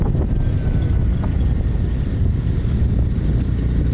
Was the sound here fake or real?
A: real